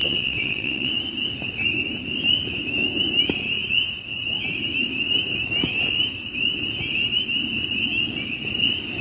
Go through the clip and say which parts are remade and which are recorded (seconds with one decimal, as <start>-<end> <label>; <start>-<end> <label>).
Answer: 0.0-0.9 remade; 0.9-9.0 recorded